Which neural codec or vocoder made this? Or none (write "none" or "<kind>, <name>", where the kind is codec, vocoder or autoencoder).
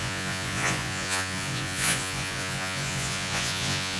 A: vocoder, Vocos